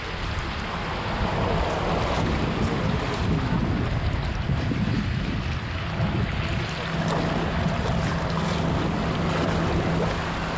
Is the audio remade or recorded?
recorded